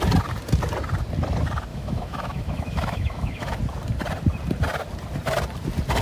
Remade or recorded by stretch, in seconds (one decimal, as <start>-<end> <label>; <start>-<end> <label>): 0.0-1.7 recorded; 1.7-3.6 remade; 3.6-6.0 recorded